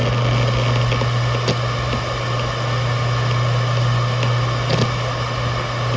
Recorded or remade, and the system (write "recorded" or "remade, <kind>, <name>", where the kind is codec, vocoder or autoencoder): recorded